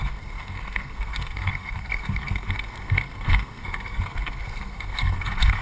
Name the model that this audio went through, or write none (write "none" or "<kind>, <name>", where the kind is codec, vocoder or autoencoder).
codec, SNAC